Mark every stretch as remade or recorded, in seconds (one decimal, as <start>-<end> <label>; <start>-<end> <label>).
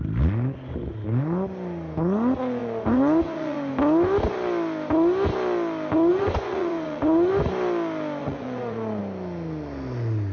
0.0-2.6 recorded; 2.6-3.7 remade; 3.7-6.1 recorded; 6.1-7.3 remade; 7.3-8.2 recorded; 8.2-9.0 remade; 9.0-10.3 recorded